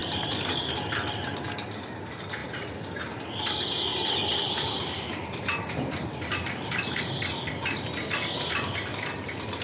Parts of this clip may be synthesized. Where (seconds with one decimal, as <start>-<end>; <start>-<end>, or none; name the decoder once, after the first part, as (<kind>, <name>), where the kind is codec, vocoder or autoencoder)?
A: 0.0-0.6 (vocoder, BigVGAN v2); 2.4-3.0; 8.9-9.6